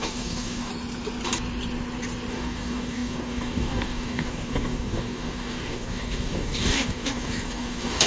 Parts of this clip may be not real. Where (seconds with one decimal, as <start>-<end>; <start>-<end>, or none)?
0.0-0.7; 2.3-8.1